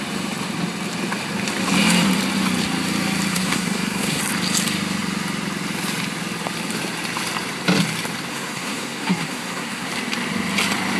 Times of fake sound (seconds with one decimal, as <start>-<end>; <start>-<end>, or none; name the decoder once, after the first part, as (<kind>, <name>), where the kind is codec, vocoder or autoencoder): 3.3-4.2 (codec, SNAC); 8.3-9.9